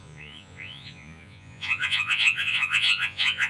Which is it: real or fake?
fake